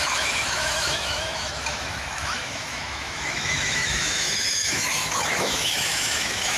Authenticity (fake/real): fake